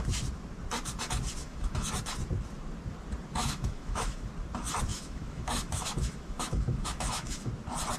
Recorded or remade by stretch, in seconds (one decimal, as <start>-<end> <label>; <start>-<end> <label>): 0.0-1.4 recorded; 1.4-1.9 remade; 1.9-3.4 recorded; 3.4-4.3 remade; 4.3-4.9 recorded; 4.9-7.5 remade; 7.5-8.0 recorded